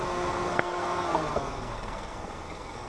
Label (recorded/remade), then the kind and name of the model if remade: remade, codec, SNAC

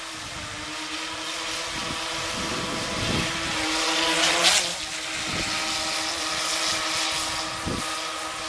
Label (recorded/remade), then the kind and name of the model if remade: recorded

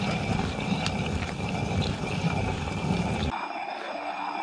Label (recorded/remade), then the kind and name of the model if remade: recorded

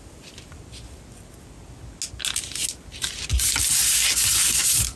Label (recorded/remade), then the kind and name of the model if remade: recorded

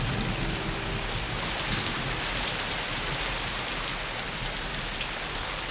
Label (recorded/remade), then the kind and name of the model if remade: recorded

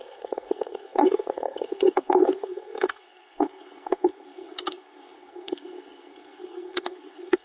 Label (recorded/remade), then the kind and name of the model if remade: remade, codec, SNAC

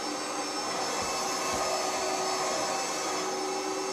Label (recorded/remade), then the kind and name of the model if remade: recorded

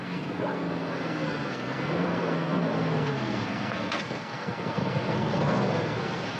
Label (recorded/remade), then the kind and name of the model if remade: remade, codec, SNAC